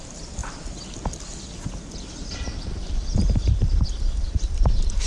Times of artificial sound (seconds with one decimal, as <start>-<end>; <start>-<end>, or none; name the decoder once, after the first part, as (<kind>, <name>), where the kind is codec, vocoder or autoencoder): 0.0-5.1 (vocoder, BigVGAN v2)